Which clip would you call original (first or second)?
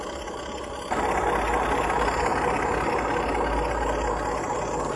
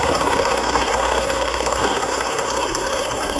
first